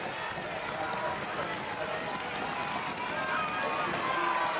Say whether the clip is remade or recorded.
recorded